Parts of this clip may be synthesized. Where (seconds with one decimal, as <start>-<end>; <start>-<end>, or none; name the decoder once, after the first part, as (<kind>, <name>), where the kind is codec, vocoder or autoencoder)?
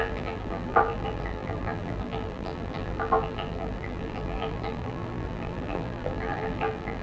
0.0-7.0 (vocoder, BigVGAN v2)